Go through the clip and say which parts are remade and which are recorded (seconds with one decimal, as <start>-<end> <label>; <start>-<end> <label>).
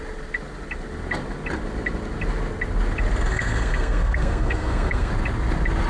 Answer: 0.0-3.3 recorded; 3.3-5.1 remade; 5.1-5.9 recorded